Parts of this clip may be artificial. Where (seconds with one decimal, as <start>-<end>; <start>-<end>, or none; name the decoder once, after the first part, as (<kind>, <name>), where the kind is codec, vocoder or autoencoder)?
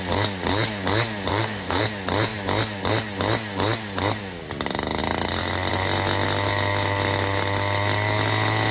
1.3-1.8 (autoencoder, DAC-VAE)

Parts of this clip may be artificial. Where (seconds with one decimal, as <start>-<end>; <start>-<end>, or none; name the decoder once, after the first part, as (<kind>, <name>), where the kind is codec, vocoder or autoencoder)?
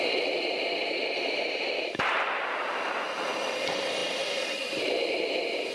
0.8-2.7 (vocoder, BigVGAN v2)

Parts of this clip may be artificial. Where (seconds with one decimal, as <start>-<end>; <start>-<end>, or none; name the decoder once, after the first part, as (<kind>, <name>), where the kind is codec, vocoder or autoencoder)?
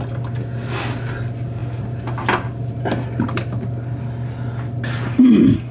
none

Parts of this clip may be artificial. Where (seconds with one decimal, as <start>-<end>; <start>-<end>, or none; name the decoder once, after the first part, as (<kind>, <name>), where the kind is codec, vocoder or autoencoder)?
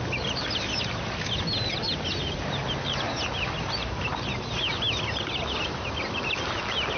none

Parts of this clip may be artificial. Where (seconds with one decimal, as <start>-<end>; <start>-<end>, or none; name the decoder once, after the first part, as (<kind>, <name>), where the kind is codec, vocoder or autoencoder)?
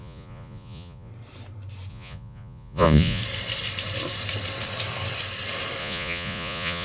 0.0-1.1 (vocoder, Vocos); 1.9-3.2; 5.8-6.8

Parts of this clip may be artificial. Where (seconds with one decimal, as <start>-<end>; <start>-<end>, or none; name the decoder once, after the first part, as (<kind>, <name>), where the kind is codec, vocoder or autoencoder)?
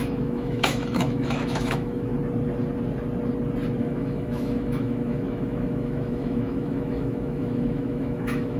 0.0-2.1 (autoencoder, DAC-VAE); 3.8-8.6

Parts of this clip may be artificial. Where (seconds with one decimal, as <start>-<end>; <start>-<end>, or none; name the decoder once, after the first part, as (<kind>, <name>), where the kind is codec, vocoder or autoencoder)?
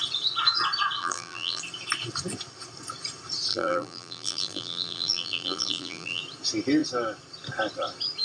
1.0-1.6 (vocoder, BigVGAN v2); 3.5-6.2